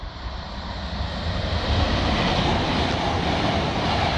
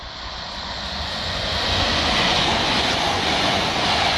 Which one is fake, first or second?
second